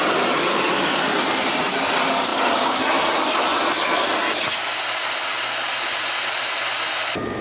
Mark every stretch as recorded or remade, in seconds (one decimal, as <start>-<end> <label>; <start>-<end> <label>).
0.0-7.4 recorded